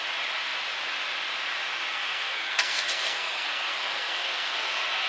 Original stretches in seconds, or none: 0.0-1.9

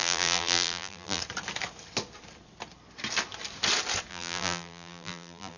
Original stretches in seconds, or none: 1.2-4.1

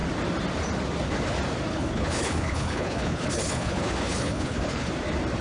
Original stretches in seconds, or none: 0.0-1.7; 4.9-5.4

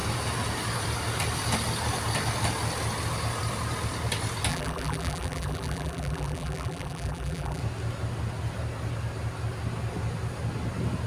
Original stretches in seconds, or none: 0.0-4.5; 7.6-11.1

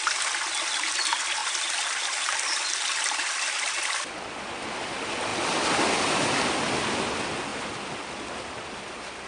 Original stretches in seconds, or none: 0.0-1.4; 3.2-5.3; 6.5-9.3

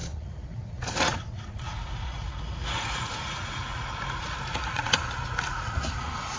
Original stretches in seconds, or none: none

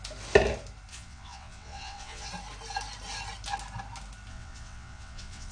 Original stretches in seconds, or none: 0.0-0.9; 2.3-4.3

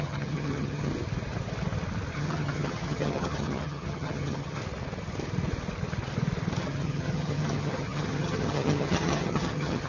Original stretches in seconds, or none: 0.9-2.1; 4.6-6.6